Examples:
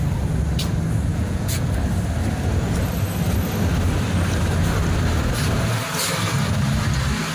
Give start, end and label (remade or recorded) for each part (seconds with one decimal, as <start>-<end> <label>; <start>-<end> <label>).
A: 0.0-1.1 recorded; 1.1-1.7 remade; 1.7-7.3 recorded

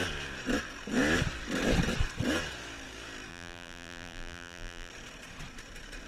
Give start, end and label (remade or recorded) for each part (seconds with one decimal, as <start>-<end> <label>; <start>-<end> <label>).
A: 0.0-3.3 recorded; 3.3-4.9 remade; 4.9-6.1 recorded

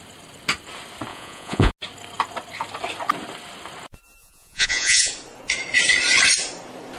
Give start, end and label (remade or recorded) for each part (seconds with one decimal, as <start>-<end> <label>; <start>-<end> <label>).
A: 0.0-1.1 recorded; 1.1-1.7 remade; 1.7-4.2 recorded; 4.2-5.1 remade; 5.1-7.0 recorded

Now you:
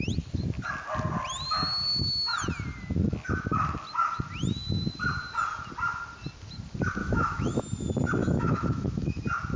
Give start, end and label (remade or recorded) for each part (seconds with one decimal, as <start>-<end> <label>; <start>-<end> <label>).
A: 0.0-7.0 recorded; 7.0-7.6 remade; 7.6-8.2 recorded; 8.2-9.2 remade; 9.2-9.6 recorded